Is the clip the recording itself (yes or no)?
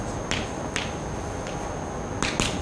yes